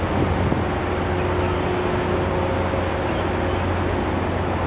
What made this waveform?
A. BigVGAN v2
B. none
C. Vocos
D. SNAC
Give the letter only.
B